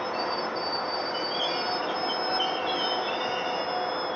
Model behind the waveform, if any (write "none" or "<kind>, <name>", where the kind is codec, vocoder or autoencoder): none